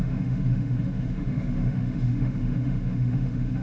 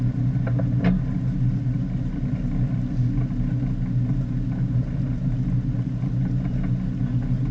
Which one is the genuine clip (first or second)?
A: second